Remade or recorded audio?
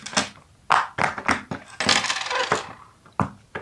recorded